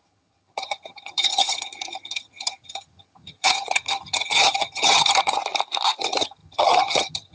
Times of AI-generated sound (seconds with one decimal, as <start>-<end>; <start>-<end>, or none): 0.0-5.4; 6.0-7.3